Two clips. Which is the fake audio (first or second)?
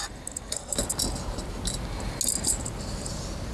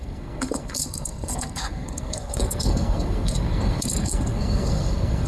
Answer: second